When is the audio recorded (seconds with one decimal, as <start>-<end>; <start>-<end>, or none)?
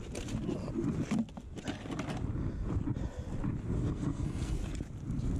0.0-3.9; 4.6-5.4